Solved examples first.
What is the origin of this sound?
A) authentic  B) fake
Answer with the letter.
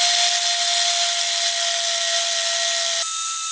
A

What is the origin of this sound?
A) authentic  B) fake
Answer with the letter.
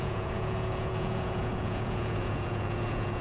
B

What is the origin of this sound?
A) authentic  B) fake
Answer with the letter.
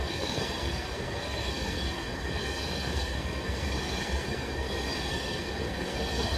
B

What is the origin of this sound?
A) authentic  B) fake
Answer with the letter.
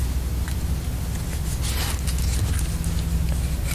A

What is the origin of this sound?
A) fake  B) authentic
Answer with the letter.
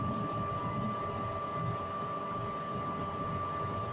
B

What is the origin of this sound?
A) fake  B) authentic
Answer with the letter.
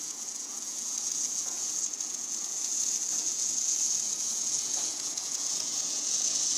A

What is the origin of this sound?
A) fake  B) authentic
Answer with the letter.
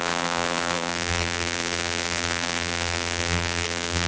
A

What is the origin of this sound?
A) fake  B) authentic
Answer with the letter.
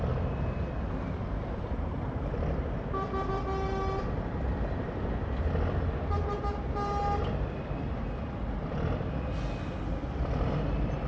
B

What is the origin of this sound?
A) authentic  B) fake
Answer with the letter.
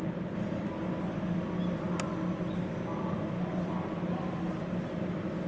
A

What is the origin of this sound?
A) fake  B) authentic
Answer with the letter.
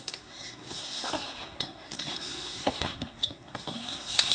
A